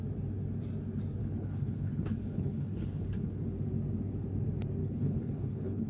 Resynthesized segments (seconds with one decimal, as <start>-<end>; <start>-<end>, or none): 1.2-3.3; 4.8-5.9

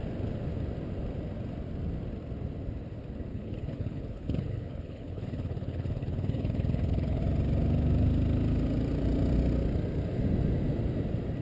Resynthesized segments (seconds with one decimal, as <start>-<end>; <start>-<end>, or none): 3.3-7.2

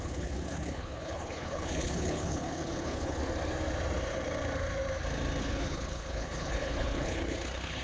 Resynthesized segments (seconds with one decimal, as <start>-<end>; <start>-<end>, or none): 0.0-3.2; 5.4-7.8

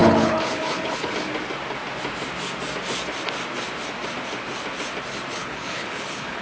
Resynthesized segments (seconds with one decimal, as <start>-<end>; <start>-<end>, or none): 0.0-1.1; 5.4-6.4

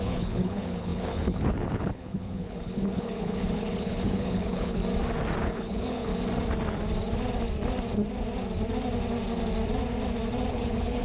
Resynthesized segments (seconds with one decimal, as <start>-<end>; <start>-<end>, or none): 0.0-4.8; 5.4-6.1; 10.5-11.0